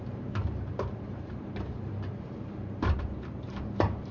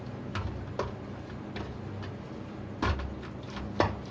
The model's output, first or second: first